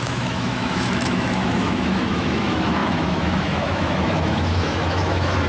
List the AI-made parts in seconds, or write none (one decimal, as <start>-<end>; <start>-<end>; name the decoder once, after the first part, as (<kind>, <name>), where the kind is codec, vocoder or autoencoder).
0.0-5.5 (autoencoder, DAC-VAE)